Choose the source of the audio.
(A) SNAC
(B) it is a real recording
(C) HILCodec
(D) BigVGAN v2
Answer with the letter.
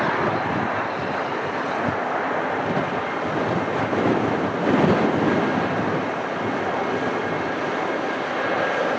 B